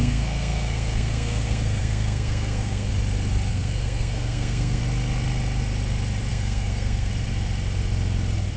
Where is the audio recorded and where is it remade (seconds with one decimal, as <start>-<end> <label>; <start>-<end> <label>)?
0.0-2.9 remade; 2.9-3.5 recorded; 3.5-4.8 remade; 4.8-6.3 recorded; 6.3-7.1 remade; 7.1-8.6 recorded

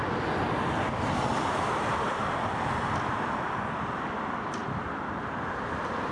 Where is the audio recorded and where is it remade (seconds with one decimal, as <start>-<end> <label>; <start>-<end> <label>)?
0.0-6.1 recorded